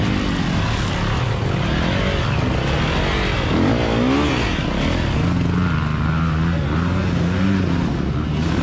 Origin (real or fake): real